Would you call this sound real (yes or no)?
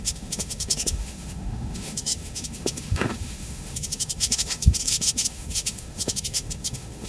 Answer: no